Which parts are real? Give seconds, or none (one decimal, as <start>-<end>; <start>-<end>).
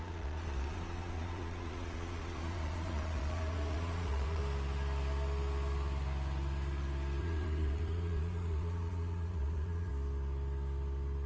4.4-7.2; 9.9-11.3